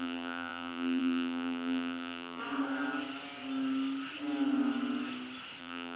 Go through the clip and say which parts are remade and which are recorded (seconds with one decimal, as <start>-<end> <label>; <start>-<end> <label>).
0.0-2.4 remade; 2.4-5.6 recorded; 5.6-6.0 remade